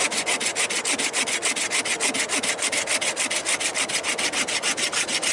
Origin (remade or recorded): recorded